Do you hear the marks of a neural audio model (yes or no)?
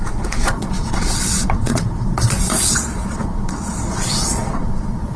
yes